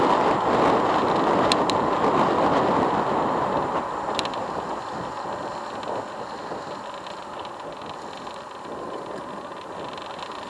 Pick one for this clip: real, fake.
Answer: real